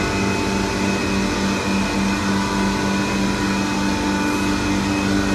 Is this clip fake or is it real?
real